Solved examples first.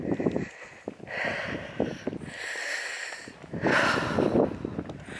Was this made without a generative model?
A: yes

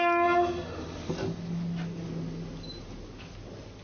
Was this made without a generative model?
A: yes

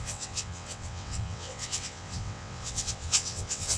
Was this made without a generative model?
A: no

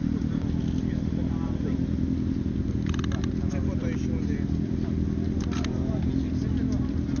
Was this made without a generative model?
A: yes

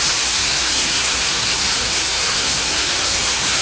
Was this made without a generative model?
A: no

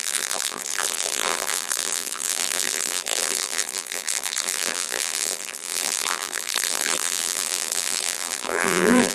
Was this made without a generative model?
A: no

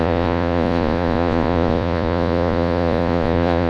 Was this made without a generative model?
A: no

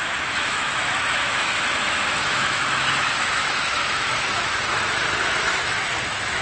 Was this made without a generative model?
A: no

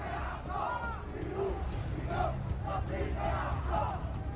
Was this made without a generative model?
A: yes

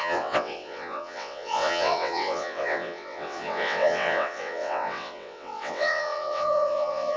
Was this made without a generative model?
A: no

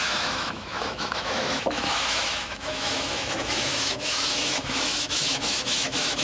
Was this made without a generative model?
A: no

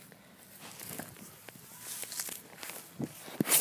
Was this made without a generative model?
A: yes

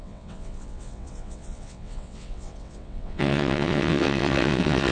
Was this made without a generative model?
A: no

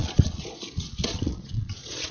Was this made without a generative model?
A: no